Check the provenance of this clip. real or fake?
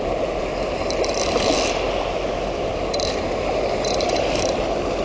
real